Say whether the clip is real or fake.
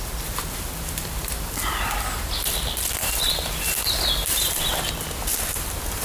real